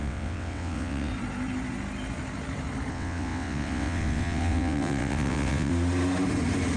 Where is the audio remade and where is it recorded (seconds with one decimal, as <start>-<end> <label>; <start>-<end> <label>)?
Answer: 0.0-1.1 remade; 1.1-2.9 recorded; 2.9-5.7 remade; 5.7-6.8 recorded